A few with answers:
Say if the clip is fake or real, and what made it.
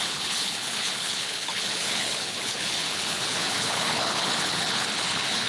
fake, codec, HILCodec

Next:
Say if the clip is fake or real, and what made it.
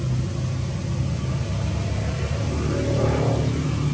real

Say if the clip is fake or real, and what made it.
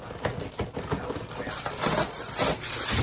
real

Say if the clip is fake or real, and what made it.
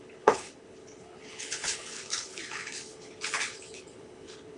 fake, codec, HILCodec